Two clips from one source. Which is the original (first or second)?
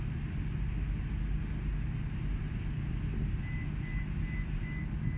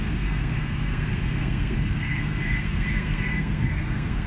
first